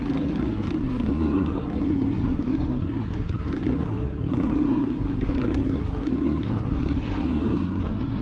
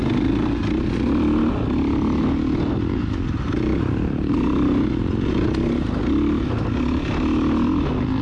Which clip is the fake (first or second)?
first